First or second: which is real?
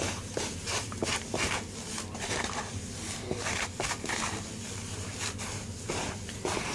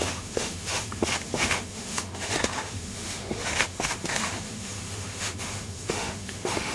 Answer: first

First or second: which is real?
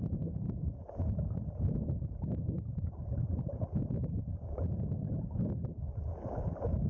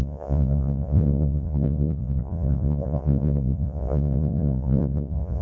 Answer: first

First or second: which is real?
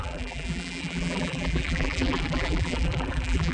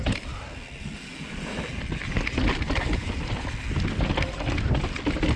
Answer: second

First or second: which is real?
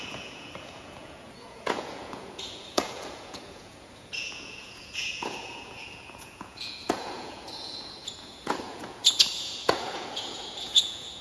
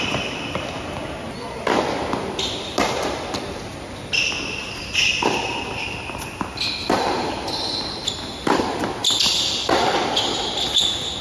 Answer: second